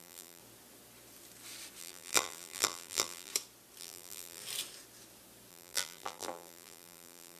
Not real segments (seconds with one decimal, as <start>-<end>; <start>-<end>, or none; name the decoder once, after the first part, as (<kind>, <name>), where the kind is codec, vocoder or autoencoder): 0.0-0.4 (vocoder, BigVGAN v2); 1.8-3.3; 3.8-4.4; 5.5-7.4